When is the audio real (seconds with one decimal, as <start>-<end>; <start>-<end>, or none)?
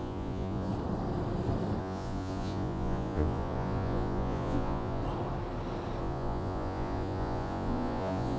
0.7-1.8; 5.0-6.0